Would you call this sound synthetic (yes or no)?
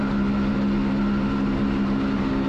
no